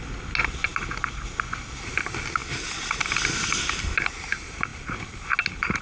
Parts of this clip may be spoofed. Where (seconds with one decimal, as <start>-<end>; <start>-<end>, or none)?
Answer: none